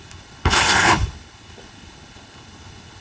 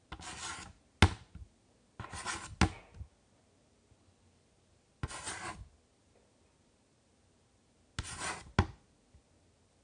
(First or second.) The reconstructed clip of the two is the first